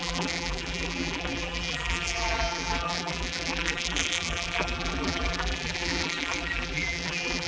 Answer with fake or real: fake